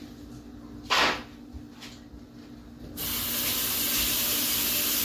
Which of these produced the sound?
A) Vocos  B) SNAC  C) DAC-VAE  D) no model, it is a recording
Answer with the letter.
D